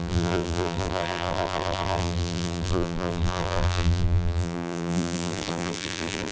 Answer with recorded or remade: remade